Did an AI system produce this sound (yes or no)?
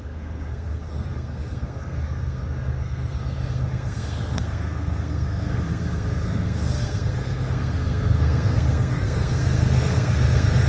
yes